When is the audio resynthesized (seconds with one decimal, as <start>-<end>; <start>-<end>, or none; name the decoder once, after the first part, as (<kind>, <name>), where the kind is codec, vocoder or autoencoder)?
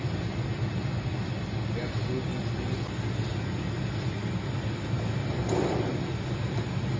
none